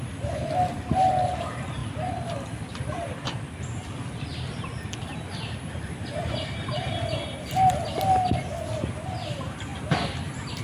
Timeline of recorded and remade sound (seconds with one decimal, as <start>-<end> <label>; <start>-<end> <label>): 0.0-9.7 recorded; 9.7-10.6 remade